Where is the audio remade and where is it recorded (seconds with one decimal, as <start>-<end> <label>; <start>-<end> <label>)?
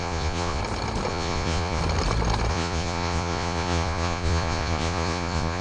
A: 0.0-0.6 remade; 0.6-1.1 recorded; 1.1-1.8 remade; 1.8-2.5 recorded; 2.5-5.6 remade